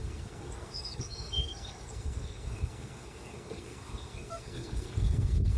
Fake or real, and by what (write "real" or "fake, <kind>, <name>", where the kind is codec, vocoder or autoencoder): fake, codec, SNAC